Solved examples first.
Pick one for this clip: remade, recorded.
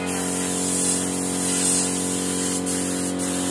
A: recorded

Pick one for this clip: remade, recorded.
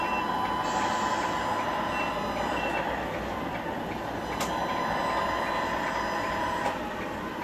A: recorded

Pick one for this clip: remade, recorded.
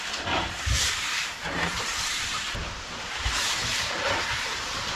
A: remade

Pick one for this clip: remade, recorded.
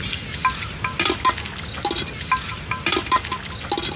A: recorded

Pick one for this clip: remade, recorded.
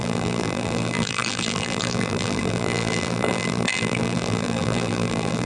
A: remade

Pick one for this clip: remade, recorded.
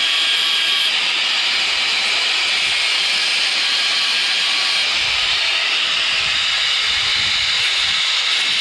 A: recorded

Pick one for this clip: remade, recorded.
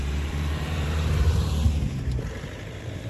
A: remade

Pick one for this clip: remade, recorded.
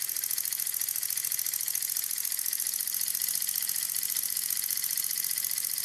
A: recorded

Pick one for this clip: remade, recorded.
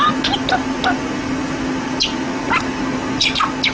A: recorded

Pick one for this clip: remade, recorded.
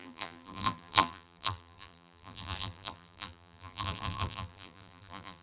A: remade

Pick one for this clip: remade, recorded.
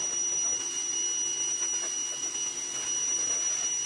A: remade